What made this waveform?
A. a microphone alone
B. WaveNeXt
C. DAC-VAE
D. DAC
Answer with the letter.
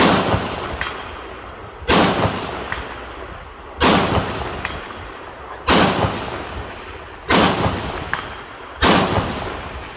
A